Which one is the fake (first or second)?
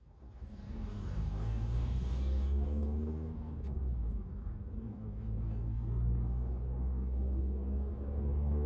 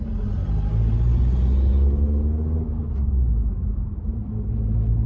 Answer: first